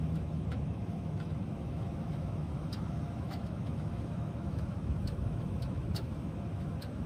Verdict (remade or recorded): remade